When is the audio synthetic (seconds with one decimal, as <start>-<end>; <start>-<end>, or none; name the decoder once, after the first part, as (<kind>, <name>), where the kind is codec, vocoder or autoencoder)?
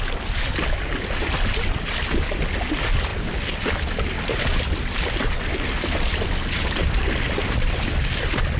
none